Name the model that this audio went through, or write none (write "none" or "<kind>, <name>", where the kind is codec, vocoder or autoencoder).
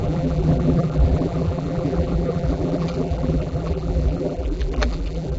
vocoder, BigVGAN v2